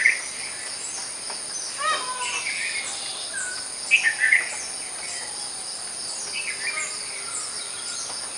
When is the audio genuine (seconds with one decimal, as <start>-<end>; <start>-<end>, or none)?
0.0-8.4